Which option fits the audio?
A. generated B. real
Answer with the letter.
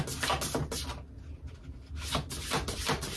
B